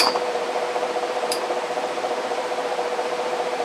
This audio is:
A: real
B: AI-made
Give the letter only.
B